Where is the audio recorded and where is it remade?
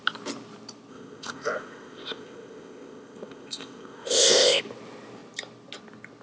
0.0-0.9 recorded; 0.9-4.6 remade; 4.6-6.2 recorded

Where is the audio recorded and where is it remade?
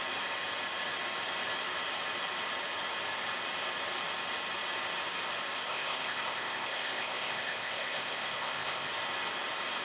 0.0-5.7 recorded; 5.7-8.9 remade; 8.9-9.8 recorded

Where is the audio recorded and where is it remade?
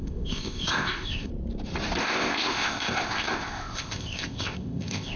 0.0-1.3 remade; 1.3-2.0 recorded; 2.0-5.2 remade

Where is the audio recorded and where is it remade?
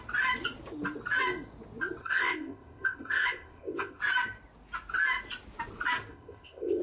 0.0-2.0 recorded; 2.0-4.0 remade; 4.0-6.1 recorded; 6.1-6.8 remade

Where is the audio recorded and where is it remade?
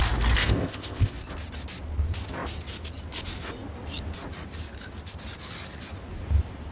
0.0-0.4 recorded; 0.4-1.1 remade; 1.1-6.7 recorded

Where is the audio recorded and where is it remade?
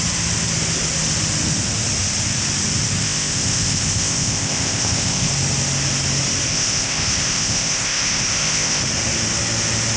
0.0-3.0 recorded; 3.0-5.3 remade; 5.3-6.5 recorded; 6.5-8.8 remade; 8.8-10.0 recorded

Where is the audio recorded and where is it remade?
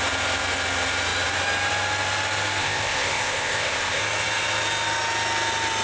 0.0-2.6 recorded; 2.6-4.0 remade; 4.0-5.8 recorded